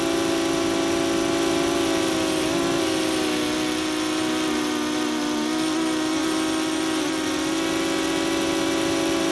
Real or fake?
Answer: real